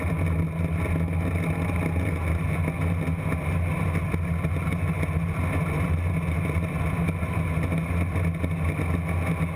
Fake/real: real